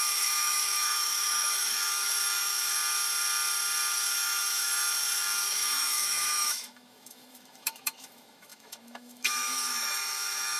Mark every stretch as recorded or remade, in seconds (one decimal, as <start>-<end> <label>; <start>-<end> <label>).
0.0-2.8 remade; 2.8-3.9 recorded; 3.9-10.6 remade

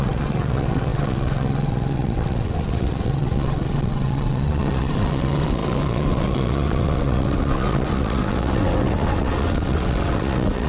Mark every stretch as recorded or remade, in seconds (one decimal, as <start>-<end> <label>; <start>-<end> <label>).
0.0-10.7 remade

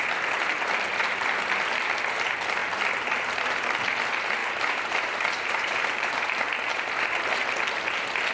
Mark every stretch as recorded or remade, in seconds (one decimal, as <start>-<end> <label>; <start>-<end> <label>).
0.0-4.4 recorded; 4.4-6.4 remade; 6.4-8.3 recorded